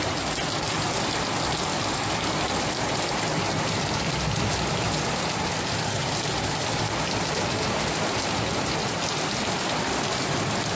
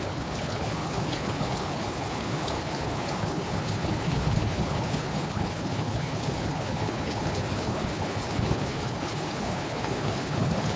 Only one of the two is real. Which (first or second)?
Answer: first